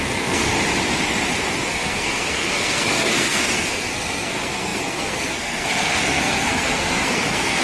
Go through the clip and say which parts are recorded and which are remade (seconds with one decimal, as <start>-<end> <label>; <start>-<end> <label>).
0.0-0.5 remade; 0.5-1.7 recorded; 1.7-7.6 remade